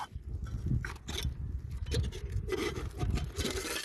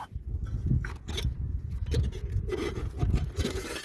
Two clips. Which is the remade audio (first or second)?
second